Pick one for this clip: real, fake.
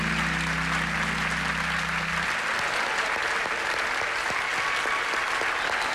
real